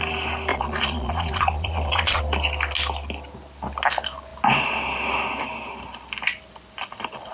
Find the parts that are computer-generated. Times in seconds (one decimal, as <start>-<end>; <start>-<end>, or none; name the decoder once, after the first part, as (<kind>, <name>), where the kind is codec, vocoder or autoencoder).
0.5-2.2 (vocoder, Vocos)